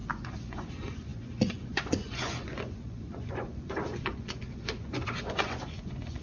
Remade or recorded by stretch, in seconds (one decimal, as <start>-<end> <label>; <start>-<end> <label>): 0.0-6.2 remade